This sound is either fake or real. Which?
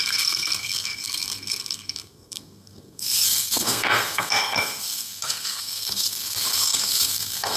fake